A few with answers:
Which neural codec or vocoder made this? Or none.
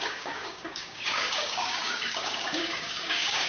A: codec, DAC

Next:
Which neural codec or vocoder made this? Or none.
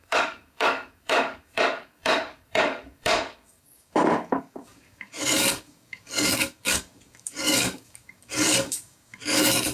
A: codec, DAC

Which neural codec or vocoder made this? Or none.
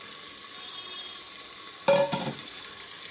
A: none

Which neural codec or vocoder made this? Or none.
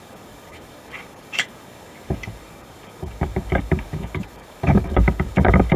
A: codec, DAC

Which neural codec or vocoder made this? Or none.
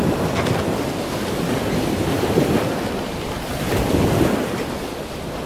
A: none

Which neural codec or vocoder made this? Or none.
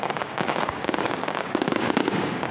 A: codec, DAC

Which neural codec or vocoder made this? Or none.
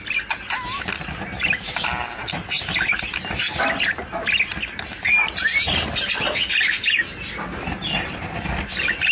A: none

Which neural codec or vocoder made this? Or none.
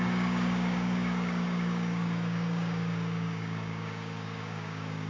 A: codec, DAC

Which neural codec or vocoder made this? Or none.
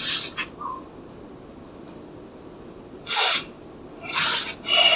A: none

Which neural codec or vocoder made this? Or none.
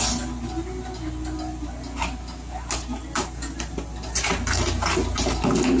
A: none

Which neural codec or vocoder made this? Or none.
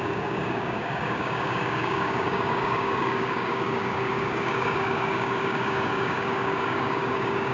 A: codec, DAC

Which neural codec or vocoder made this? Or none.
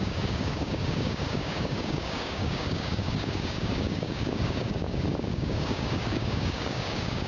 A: codec, DAC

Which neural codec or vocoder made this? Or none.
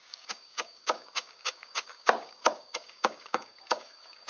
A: codec, DAC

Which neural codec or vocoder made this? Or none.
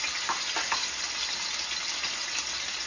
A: none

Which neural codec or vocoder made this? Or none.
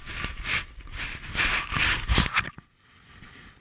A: none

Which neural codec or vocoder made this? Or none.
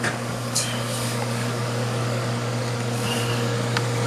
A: codec, DAC